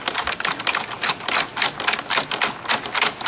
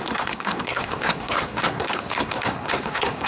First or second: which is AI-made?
second